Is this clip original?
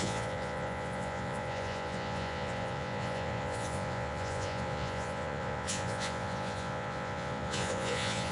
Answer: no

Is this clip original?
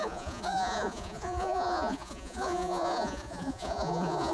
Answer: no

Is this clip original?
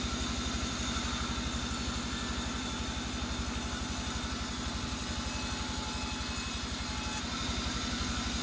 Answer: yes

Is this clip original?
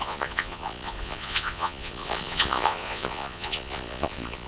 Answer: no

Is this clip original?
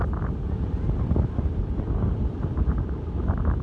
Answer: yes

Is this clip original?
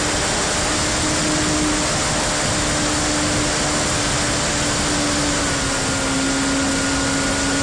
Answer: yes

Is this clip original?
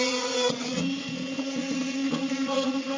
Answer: no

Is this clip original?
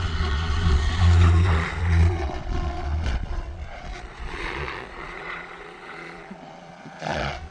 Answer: no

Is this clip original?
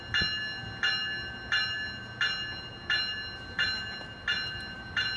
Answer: yes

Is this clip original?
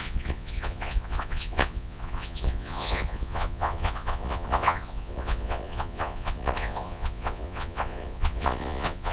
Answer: no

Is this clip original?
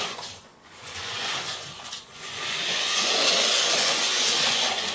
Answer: no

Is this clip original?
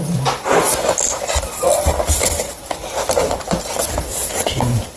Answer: yes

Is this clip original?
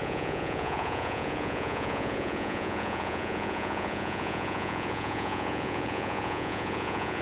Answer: no